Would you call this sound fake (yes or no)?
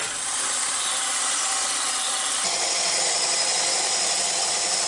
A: no